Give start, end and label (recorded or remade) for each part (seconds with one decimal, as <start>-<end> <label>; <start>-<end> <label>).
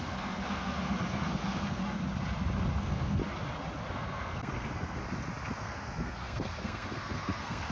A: 0.0-1.8 remade; 1.8-2.8 recorded; 2.8-3.2 remade; 3.2-3.9 recorded; 3.9-5.0 remade; 5.0-5.6 recorded; 5.6-7.7 remade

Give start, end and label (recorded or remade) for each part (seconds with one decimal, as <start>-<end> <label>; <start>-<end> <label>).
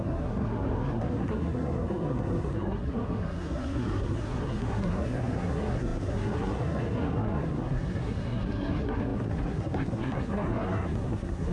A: 0.0-11.5 remade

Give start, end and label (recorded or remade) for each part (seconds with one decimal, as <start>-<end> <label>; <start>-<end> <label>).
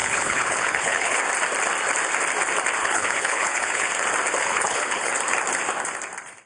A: 0.0-1.2 remade; 1.2-2.8 recorded; 2.8-3.9 remade; 3.9-4.4 recorded; 4.4-5.1 remade; 5.1-6.5 recorded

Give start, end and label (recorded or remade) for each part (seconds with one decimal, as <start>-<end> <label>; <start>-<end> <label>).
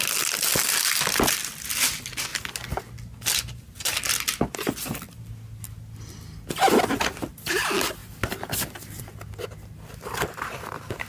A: 0.0-11.1 recorded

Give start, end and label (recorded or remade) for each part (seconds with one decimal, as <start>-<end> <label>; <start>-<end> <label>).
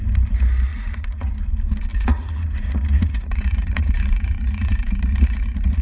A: 0.0-0.7 recorded; 0.7-1.3 remade; 1.3-1.9 recorded; 1.9-5.8 remade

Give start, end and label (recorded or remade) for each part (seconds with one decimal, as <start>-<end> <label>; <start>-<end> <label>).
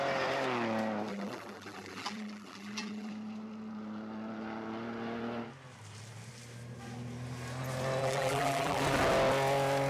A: 0.0-1.1 recorded; 1.1-3.1 remade; 3.1-8.0 recorded; 8.0-8.8 remade; 8.8-9.9 recorded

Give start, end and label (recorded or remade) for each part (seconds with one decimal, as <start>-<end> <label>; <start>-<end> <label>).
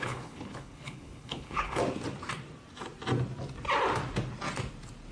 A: 0.0-1.8 remade; 1.8-5.1 recorded